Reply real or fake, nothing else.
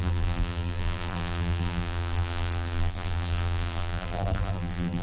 fake